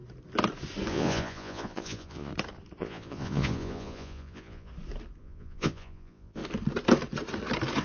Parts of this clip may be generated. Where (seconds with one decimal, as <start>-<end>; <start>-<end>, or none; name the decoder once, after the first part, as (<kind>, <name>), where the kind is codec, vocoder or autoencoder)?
0.9-2.3 (vocoder, Vocos); 2.8-4.7; 5.2-6.4